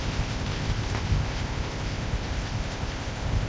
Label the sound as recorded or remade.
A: remade